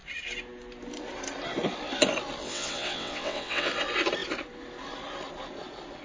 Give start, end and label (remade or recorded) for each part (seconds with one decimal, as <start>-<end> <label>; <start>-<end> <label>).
0.0-2.4 recorded; 2.4-3.7 remade; 3.7-6.0 recorded